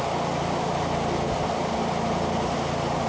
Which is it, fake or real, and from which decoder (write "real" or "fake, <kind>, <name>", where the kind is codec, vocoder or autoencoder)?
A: real